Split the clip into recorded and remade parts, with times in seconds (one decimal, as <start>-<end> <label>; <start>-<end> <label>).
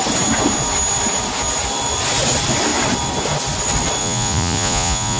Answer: 0.0-4.0 recorded; 4.0-5.2 remade